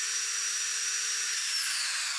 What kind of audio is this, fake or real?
fake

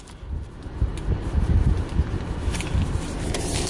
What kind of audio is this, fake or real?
real